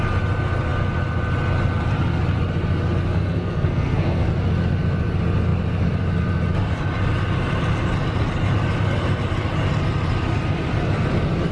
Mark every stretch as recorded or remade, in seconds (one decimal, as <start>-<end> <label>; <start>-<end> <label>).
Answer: 0.0-3.1 recorded; 3.1-4.3 remade; 4.3-11.5 recorded